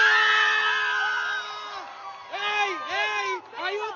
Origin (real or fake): real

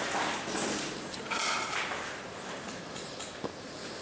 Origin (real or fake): real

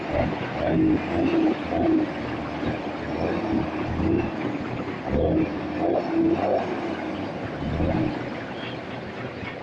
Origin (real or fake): real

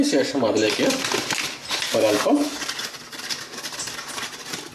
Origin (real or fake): fake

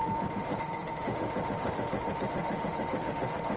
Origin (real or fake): fake